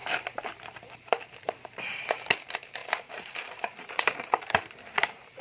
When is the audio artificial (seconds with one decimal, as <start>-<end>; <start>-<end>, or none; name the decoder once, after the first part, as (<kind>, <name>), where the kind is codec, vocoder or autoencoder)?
0.0-5.4 (vocoder, BigVGAN v2)